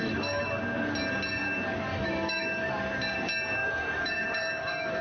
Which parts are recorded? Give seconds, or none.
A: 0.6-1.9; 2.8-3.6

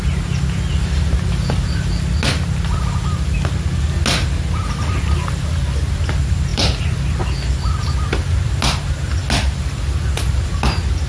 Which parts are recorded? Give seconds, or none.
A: 0.0-6.5; 7.2-11.1

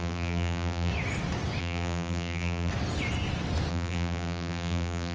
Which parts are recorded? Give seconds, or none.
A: 0.9-1.6; 2.7-3.7

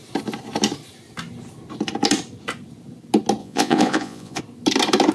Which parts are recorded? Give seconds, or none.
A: 0.0-3.4; 4.4-5.1

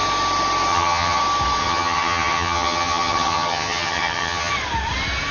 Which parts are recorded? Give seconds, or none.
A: 0.0-0.7; 1.2-1.6; 4.5-5.3

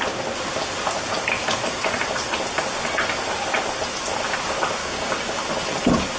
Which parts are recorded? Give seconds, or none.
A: 0.0-4.8; 5.4-6.2

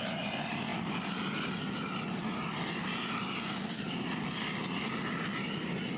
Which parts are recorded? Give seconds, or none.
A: 0.0-6.0